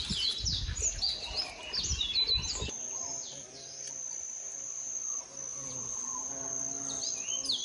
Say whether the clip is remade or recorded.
recorded